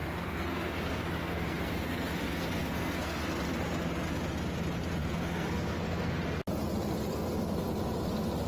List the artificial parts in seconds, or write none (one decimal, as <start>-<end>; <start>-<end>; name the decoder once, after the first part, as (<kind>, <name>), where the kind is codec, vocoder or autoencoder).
0.0-3.2 (codec, SNAC); 5.0-6.1